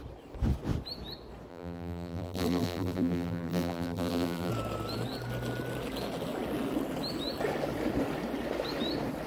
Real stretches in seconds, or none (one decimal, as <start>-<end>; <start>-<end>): 0.0-1.5; 4.5-9.3